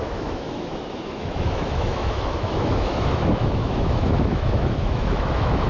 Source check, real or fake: fake